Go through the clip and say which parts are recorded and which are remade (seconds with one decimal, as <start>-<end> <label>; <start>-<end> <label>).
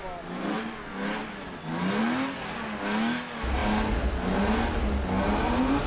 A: 0.0-5.9 recorded